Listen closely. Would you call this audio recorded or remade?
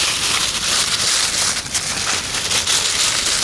recorded